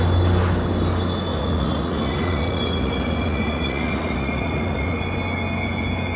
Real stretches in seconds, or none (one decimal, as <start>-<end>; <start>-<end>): 0.0-1.3; 5.0-6.2